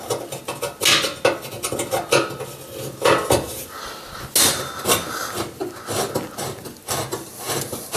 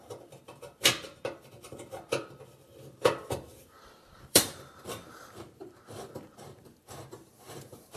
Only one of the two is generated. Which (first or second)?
second